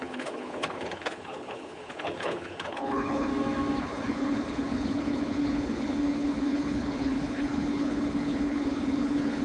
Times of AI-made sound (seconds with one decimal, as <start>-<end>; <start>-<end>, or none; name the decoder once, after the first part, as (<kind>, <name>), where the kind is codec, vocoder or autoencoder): 0.0-3.3 (codec, HILCodec); 3.8-9.4